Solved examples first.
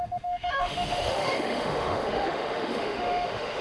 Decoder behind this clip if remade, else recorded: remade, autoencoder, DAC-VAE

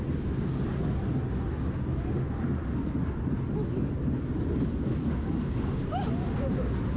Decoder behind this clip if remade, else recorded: recorded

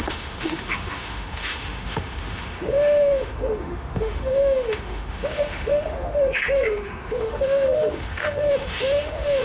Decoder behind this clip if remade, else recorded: remade, autoencoder, DAC-VAE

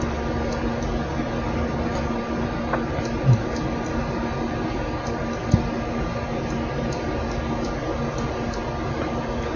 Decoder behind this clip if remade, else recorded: recorded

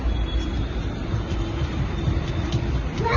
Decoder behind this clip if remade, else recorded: recorded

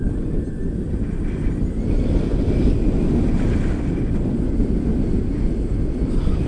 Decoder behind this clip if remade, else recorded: recorded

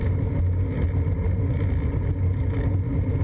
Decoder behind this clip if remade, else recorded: recorded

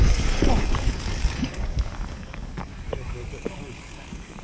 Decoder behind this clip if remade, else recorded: remade, codec, DAC